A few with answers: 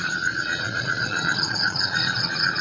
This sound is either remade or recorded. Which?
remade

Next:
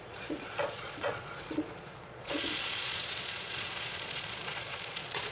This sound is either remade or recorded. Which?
remade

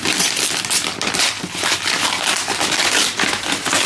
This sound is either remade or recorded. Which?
recorded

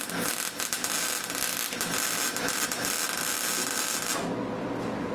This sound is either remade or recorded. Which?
recorded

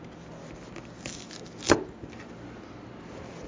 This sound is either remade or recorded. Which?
recorded